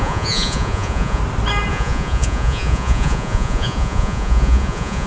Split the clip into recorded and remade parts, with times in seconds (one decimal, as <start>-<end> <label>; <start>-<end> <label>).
0.0-1.2 remade; 1.2-1.7 recorded; 1.7-5.1 remade